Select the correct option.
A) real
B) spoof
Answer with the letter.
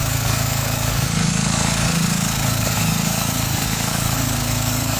B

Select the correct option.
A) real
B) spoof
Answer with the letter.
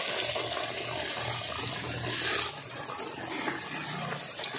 A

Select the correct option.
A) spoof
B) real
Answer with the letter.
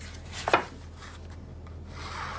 B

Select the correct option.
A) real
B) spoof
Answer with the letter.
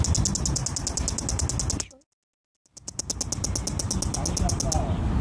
A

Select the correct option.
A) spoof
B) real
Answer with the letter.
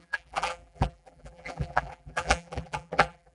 A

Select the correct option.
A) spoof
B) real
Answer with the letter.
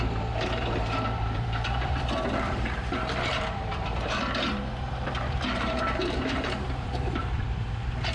A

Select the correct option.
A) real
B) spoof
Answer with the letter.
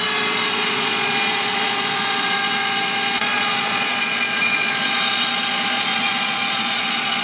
B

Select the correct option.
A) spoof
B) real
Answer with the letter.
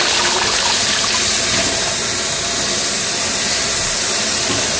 B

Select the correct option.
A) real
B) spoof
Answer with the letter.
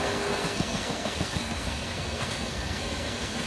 B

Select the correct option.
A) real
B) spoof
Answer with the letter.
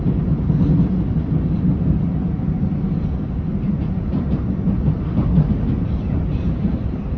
A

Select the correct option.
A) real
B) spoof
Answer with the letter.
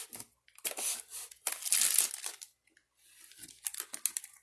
A